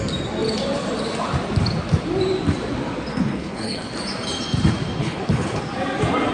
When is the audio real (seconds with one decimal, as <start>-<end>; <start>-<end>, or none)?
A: 0.0-3.1; 3.9-5.0; 5.6-6.3